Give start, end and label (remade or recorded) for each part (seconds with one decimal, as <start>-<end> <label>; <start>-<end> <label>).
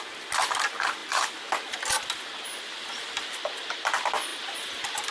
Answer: 0.0-5.1 recorded